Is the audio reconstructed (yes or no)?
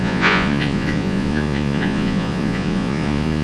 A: yes